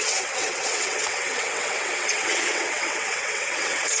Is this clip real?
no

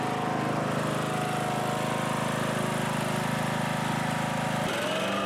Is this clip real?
yes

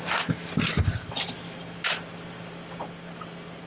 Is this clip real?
yes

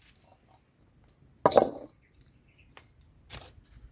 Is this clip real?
yes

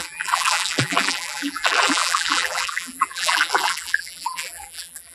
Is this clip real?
no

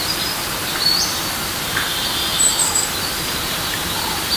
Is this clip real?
yes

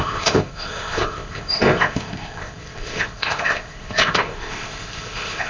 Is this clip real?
no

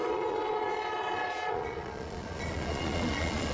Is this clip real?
no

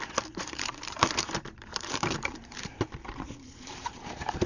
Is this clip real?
no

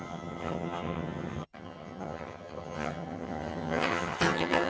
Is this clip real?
no